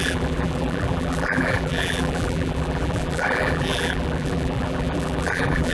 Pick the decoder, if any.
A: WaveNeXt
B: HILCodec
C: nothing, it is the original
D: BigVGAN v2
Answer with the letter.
D